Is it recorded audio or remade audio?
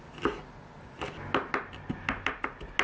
recorded